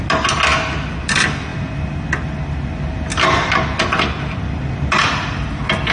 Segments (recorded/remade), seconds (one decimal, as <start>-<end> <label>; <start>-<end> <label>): 0.0-5.9 recorded